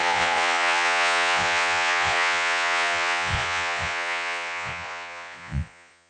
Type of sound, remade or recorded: remade